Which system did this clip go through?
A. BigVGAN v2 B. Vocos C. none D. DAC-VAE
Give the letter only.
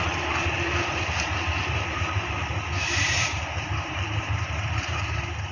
A